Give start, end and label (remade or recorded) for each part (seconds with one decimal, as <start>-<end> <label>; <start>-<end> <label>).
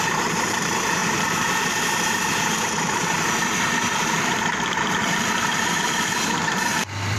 0.0-7.2 remade